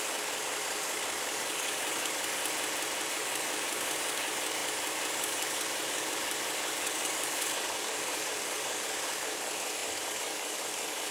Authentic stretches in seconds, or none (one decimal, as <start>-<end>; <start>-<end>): 2.4-3.1